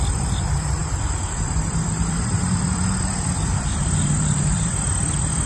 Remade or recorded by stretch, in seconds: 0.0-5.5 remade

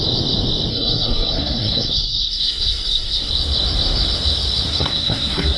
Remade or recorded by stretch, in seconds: 0.0-0.7 recorded; 0.7-3.3 remade; 3.3-4.7 recorded; 4.7-5.6 remade

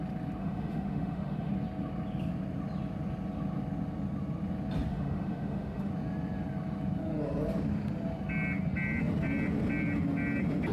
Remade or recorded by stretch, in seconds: 0.0-0.4 recorded; 0.4-1.5 remade; 1.5-4.9 recorded; 4.9-5.9 remade; 5.9-10.7 recorded

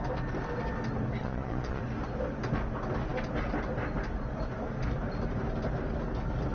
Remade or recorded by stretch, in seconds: 0.0-1.2 recorded; 1.2-1.8 remade; 1.8-6.5 recorded

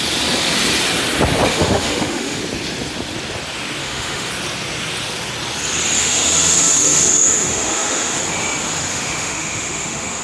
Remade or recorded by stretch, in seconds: 0.0-1.5 recorded; 1.5-2.4 remade; 2.4-3.8 recorded; 3.8-4.3 remade; 4.3-6.0 recorded; 6.0-8.2 remade; 8.2-8.9 recorded; 8.9-10.2 remade

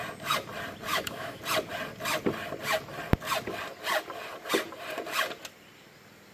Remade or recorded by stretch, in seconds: 0.0-0.9 recorded; 0.9-1.4 remade; 1.4-6.3 recorded

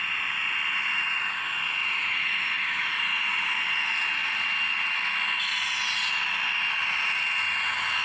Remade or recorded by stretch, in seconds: 0.0-1.8 recorded; 1.8-3.5 remade; 3.5-8.0 recorded